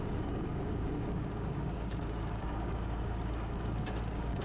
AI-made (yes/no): yes